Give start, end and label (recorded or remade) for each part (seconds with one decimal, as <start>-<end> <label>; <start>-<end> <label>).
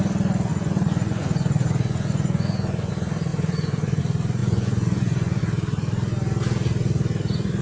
0.0-0.5 recorded; 0.5-2.9 remade; 2.9-3.3 recorded; 3.3-4.0 remade; 4.0-4.4 recorded; 4.4-5.4 remade; 5.4-7.6 recorded